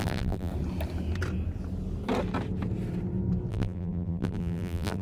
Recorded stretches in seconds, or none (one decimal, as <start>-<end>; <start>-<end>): 0.5-3.5